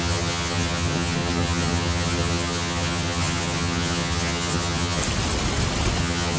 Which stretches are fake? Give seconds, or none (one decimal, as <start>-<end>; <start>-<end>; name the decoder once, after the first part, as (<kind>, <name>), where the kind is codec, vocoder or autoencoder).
0.0-5.0 (vocoder, HiFi-GAN); 6.0-6.4